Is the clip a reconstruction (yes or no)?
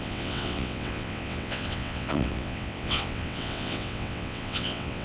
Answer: yes